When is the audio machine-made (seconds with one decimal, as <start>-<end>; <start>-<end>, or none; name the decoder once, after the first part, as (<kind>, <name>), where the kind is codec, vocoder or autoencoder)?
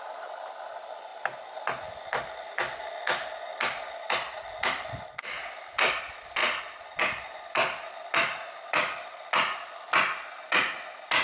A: none